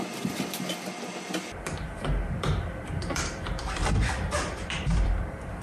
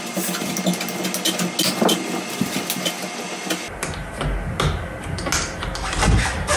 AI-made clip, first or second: first